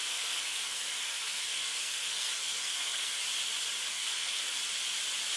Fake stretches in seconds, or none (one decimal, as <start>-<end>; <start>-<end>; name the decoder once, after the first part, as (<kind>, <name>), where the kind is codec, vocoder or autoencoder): 0.0-3.2 (codec, SNAC); 3.9-4.6